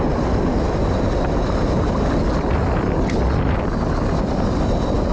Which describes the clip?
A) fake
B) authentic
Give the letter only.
B